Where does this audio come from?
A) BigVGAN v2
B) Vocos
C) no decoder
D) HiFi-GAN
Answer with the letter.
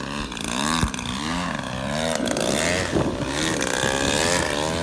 C